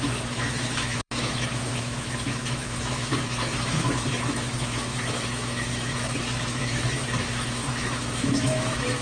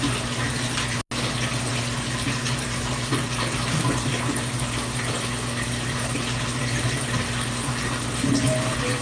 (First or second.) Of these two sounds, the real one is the second